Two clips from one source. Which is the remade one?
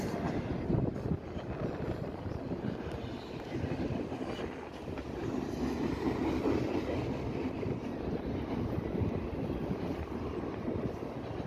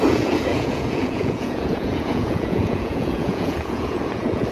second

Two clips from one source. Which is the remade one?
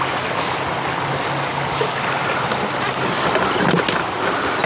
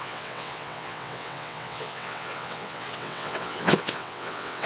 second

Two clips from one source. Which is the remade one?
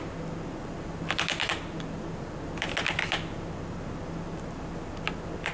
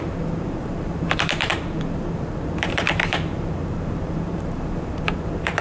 second